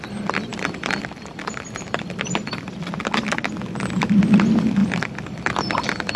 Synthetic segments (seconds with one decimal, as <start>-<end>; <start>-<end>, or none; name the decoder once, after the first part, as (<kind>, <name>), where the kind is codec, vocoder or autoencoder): 0.5-3.0 (vocoder, BigVGAN v2)